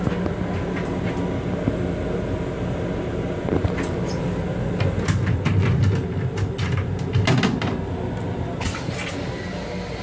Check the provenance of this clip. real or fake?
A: real